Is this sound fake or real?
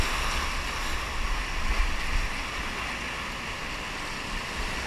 real